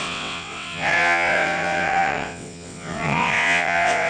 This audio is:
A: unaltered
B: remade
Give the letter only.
B